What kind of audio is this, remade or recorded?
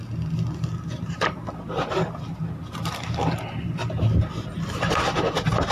remade